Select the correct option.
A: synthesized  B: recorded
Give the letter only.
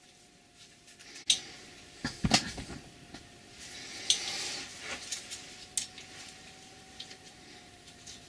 B